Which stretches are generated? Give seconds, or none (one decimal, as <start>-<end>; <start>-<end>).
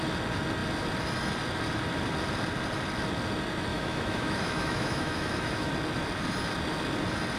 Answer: 3.7-5.7